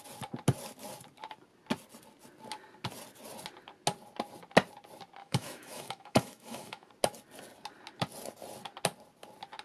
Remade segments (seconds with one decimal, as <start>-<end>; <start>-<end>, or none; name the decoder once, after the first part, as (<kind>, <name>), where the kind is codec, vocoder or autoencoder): 5.2-6.9 (autoencoder, DAC-VAE)